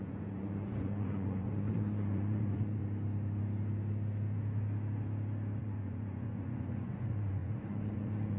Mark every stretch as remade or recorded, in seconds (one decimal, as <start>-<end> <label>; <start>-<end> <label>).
0.0-2.8 remade; 2.8-5.6 recorded; 5.6-8.4 remade